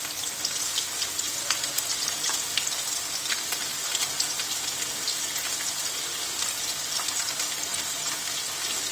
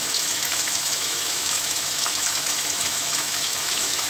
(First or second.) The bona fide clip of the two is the first